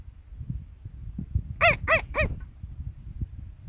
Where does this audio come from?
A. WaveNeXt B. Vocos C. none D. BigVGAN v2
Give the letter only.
C